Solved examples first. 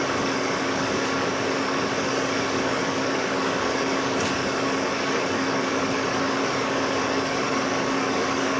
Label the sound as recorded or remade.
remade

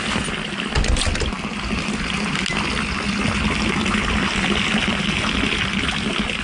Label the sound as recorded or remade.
recorded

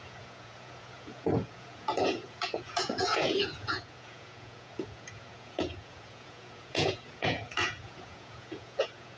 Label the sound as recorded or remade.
remade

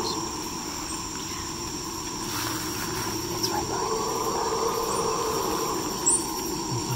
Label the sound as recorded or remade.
recorded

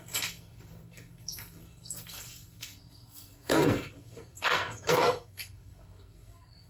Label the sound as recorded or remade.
remade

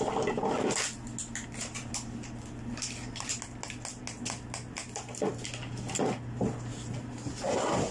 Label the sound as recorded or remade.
recorded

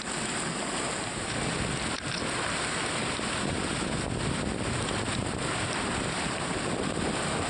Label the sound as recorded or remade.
remade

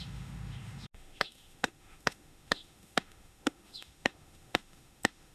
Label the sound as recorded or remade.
remade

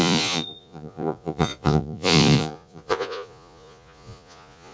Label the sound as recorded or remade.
remade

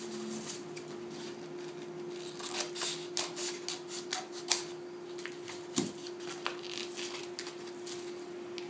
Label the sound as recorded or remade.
recorded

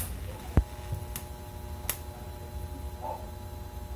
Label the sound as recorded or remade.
recorded